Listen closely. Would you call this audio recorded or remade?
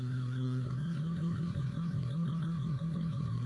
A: remade